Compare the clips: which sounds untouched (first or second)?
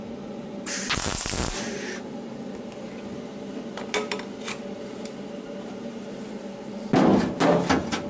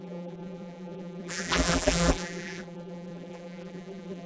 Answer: first